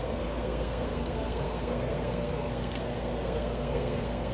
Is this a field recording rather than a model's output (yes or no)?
no